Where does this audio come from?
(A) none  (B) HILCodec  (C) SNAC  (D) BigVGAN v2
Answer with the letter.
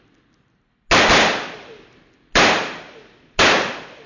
A